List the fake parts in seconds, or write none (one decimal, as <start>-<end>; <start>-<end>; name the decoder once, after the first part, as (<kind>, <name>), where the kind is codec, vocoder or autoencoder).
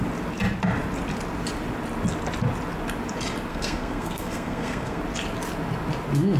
3.5-5.0 (codec, SNAC)